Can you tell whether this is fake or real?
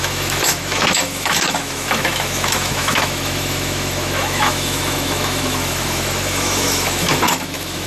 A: fake